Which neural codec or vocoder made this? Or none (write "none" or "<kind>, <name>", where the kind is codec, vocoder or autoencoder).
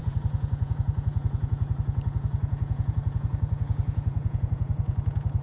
vocoder, Vocos